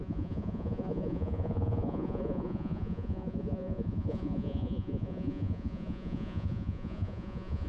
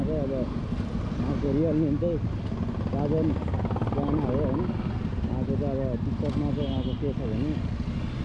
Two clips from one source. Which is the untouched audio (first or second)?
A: second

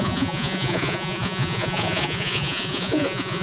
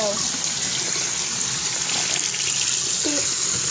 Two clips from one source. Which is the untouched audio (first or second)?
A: second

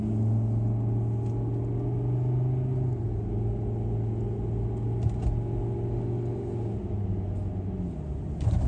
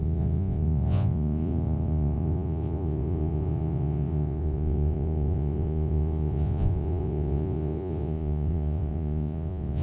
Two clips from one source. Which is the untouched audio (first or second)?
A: first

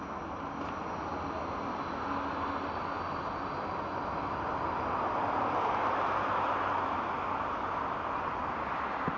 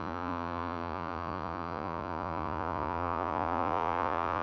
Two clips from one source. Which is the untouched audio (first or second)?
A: first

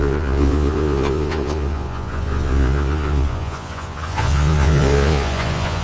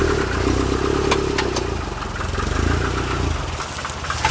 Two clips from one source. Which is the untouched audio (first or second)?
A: second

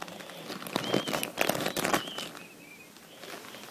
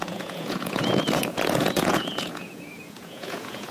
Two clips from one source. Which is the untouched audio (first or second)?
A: first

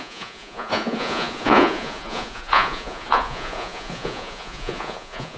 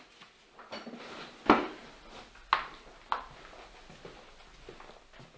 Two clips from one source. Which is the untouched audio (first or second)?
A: second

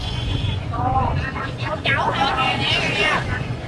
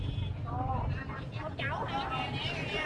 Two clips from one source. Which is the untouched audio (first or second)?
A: second